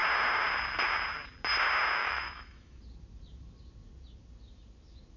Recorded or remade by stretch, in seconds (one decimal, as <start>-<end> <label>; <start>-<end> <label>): 0.0-2.0 recorded; 2.0-2.8 remade; 2.8-5.2 recorded